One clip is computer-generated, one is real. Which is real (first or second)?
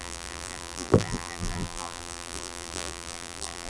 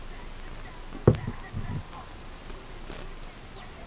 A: second